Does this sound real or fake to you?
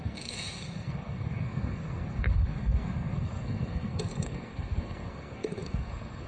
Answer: fake